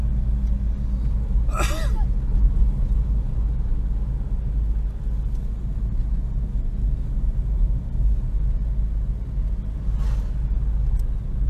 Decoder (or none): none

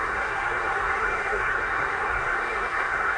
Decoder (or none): codec, SNAC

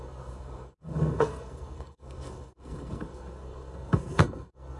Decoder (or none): codec, SNAC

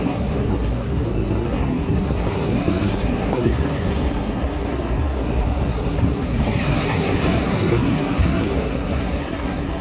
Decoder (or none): codec, SNAC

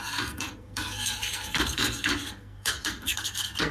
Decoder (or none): codec, SNAC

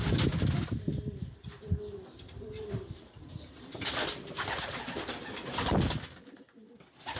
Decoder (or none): none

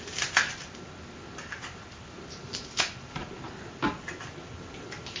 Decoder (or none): none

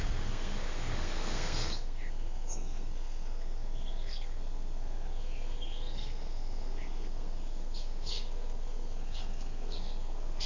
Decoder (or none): codec, SNAC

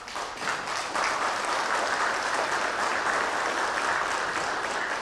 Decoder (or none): none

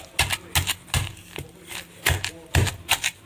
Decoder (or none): none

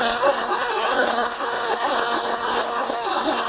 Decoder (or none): codec, SNAC